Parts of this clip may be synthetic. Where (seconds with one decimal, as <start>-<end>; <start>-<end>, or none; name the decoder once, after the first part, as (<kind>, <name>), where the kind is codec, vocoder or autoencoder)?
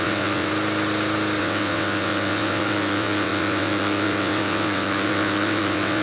0.0-0.5 (vocoder, WaveNeXt); 1.4-6.0